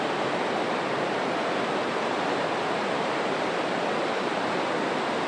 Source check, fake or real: real